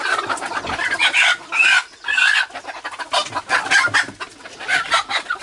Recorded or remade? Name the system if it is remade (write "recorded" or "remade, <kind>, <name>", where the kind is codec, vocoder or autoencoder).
recorded